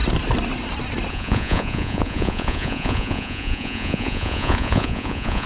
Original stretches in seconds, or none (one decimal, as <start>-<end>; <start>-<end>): 0.0-1.1